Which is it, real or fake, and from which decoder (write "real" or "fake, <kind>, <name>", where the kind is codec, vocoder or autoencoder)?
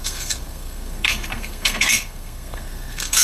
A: fake, codec, SNAC